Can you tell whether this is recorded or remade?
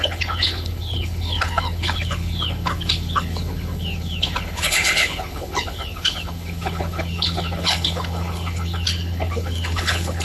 remade